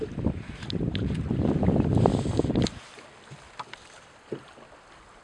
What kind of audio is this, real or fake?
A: real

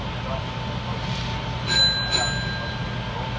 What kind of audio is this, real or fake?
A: real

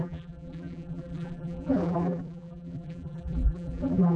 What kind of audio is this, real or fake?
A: fake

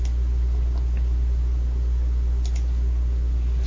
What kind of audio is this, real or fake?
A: real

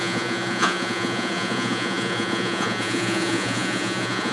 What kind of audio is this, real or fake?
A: fake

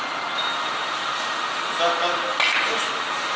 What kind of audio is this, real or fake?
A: real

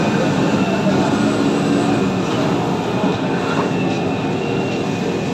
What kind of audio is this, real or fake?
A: real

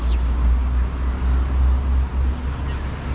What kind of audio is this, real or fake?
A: real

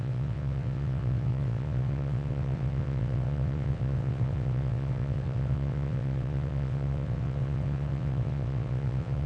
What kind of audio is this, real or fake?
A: fake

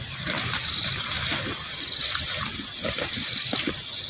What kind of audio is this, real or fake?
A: real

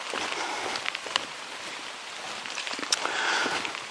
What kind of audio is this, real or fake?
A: real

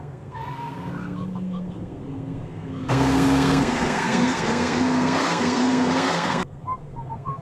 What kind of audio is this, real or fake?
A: fake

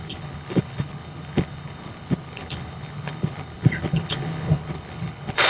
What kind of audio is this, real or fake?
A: fake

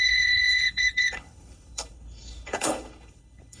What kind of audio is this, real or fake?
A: fake